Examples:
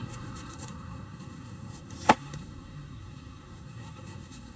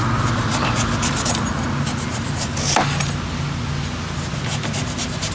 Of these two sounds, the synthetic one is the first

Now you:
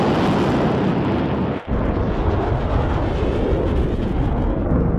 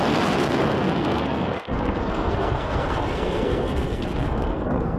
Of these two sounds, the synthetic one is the second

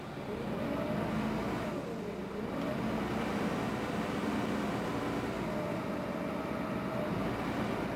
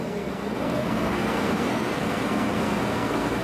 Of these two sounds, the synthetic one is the second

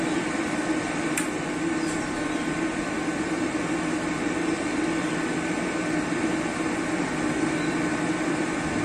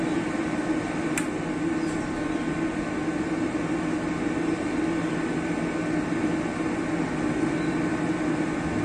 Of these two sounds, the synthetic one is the first